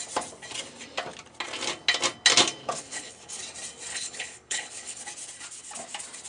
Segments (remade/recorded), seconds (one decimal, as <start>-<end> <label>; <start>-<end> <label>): 0.0-2.6 recorded; 2.6-3.4 remade; 3.4-3.9 recorded; 3.9-5.0 remade; 5.0-6.3 recorded